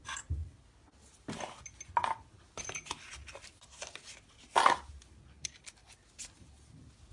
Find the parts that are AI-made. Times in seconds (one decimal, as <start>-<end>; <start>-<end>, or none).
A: none